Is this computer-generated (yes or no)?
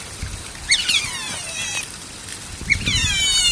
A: no